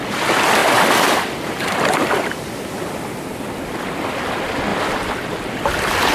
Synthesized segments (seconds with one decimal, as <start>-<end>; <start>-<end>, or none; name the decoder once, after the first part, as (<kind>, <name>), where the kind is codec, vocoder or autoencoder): 0.6-4.3 (vocoder, BigVGAN v2); 4.7-6.1